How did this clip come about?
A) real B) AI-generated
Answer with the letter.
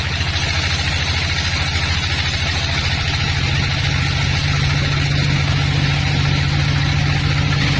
A